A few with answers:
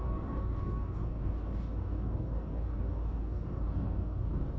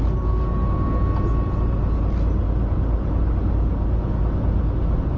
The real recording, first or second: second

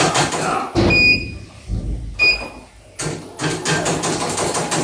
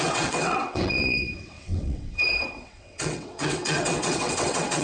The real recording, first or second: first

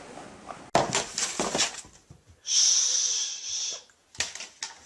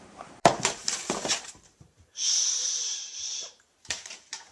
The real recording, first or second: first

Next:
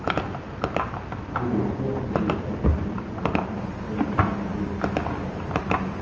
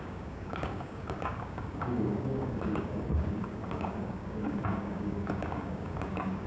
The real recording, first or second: first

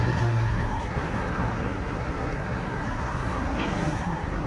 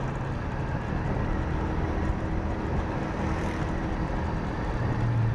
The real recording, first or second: second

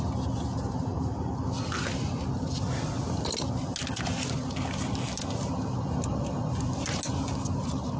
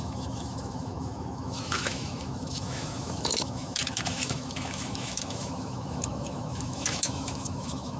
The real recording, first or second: first